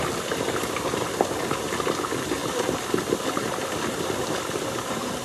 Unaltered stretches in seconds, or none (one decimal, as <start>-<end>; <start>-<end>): 0.0-5.2